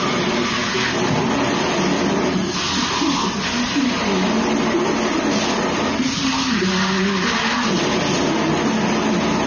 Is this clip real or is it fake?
real